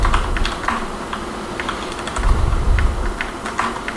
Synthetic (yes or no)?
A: no